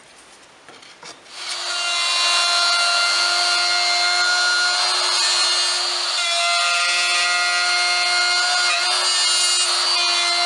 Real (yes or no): yes